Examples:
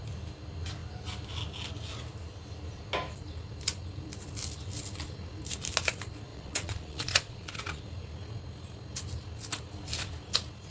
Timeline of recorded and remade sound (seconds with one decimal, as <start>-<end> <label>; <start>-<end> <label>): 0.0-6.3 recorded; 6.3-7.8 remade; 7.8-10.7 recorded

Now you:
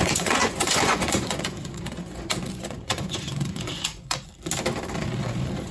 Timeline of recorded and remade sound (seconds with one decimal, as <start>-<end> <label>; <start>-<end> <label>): 0.0-4.3 remade; 4.3-5.1 recorded; 5.1-5.7 remade

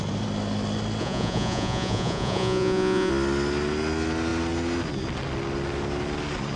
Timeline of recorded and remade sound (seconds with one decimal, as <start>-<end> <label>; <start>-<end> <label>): 0.0-1.0 recorded; 1.0-3.1 remade; 3.1-6.6 recorded